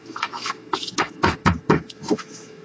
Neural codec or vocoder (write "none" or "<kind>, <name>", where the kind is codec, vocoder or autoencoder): autoencoder, DAC-VAE